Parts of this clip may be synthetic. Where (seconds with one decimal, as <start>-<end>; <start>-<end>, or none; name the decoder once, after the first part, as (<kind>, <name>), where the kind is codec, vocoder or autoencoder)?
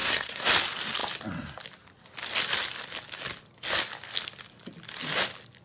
0.0-0.5 (codec, SNAC)